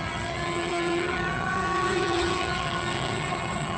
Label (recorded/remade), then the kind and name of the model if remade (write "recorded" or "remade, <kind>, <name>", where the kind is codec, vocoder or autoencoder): remade, vocoder, HiFi-GAN